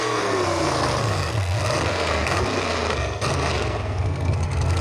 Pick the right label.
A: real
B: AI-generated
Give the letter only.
B